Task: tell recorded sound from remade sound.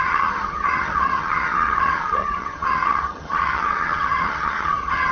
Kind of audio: remade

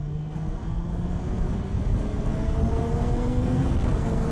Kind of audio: remade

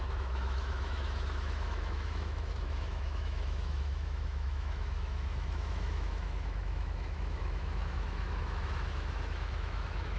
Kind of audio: remade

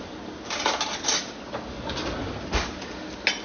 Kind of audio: recorded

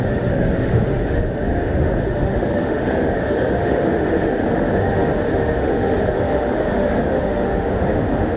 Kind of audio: remade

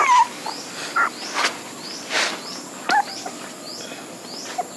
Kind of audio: recorded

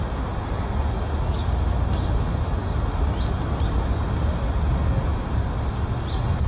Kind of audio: recorded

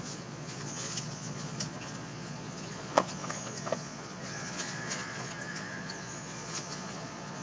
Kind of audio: remade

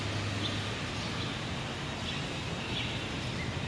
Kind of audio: recorded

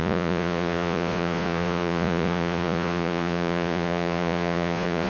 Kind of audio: remade